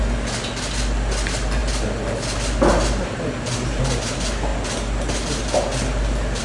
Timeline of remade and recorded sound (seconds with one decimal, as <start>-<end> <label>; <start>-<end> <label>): 0.0-6.4 recorded